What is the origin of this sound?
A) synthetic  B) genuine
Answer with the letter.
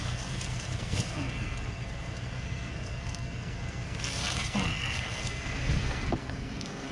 A